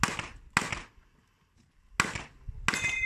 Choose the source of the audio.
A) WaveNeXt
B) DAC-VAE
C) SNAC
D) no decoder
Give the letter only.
D